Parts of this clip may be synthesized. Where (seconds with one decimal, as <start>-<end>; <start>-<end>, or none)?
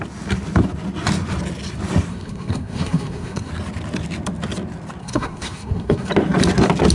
2.1-3.5; 5.0-6.1